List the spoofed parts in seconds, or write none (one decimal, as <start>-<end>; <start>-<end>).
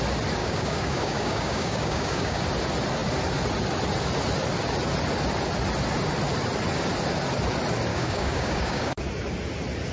0.4-2.4; 7.9-9.0